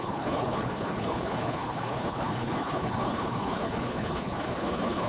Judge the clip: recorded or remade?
remade